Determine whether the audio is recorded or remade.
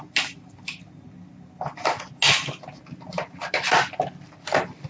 recorded